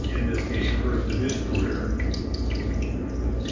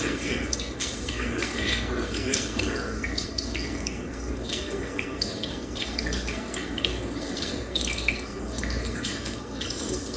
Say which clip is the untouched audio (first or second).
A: first